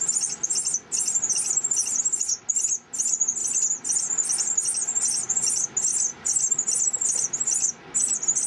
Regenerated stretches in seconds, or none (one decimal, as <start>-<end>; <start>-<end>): none